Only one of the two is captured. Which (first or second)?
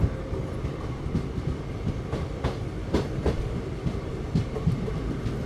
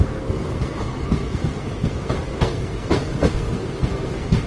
first